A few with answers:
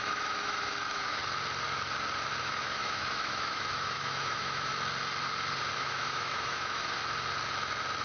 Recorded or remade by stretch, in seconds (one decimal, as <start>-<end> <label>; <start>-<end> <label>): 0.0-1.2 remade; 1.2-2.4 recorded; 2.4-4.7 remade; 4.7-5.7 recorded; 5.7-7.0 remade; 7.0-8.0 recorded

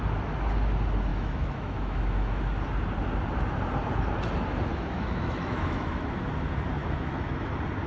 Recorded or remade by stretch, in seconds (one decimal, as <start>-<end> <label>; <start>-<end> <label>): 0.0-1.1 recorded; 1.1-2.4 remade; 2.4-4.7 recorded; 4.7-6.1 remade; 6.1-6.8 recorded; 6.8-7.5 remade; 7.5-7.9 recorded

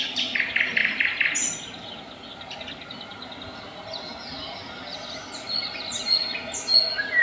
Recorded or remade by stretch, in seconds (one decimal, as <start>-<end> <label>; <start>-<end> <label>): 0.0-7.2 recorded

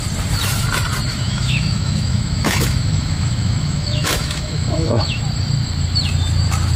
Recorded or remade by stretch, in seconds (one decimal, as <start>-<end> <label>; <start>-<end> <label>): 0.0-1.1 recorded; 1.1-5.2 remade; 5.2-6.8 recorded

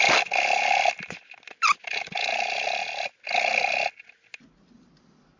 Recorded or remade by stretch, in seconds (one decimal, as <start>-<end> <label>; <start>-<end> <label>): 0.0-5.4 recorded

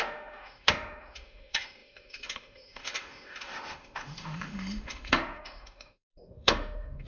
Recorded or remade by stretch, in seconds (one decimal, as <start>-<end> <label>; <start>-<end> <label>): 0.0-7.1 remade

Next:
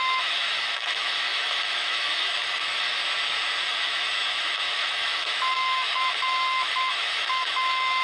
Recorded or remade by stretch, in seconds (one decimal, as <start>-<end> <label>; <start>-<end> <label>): 0.0-3.0 remade; 3.0-3.7 recorded; 3.7-8.0 remade